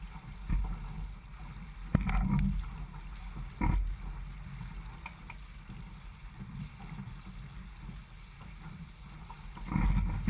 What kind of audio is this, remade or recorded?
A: recorded